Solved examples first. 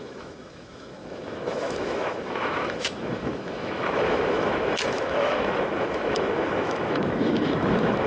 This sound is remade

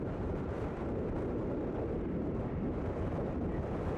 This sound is recorded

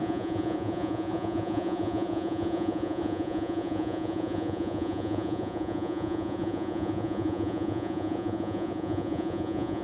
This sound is remade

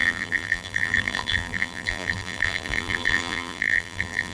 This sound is remade